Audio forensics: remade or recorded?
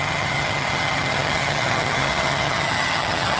remade